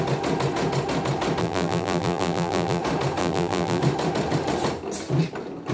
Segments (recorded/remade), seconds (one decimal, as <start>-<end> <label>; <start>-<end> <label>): 0.0-1.4 recorded; 1.4-2.8 remade; 2.8-3.2 recorded; 3.2-3.8 remade; 3.8-5.7 recorded